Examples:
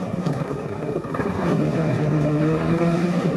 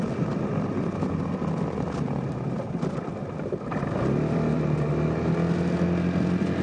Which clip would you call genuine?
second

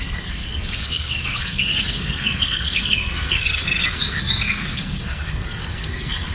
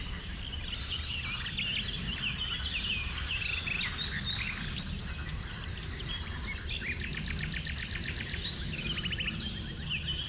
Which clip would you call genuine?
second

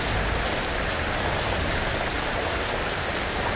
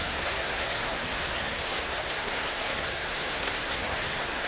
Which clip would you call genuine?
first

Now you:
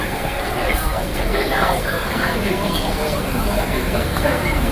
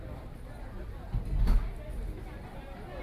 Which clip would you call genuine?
second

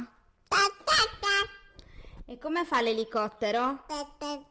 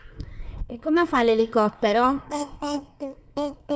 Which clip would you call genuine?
first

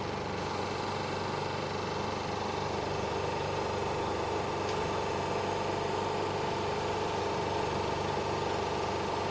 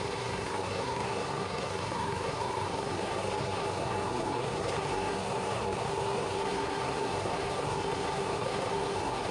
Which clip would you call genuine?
first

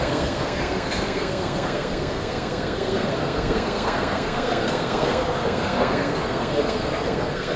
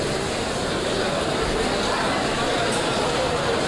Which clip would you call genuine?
second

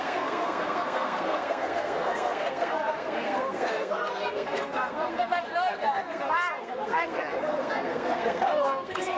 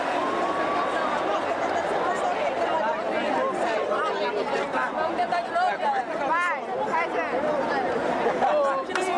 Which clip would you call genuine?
second